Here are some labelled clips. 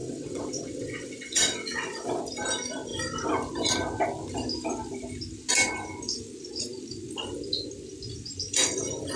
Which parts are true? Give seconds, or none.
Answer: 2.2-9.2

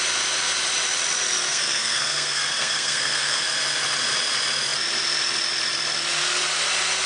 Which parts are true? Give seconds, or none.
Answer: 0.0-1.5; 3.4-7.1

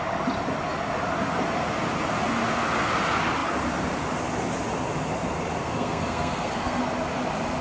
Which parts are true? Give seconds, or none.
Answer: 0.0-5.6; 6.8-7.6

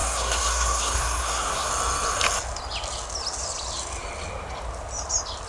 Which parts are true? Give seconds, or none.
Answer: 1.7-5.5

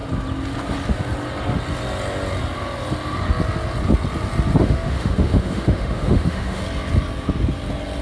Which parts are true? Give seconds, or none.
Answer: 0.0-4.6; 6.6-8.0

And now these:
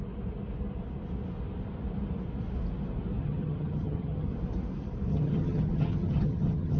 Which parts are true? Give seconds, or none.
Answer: 0.0-3.2; 4.3-5.1

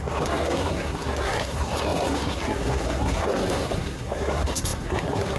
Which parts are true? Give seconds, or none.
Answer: none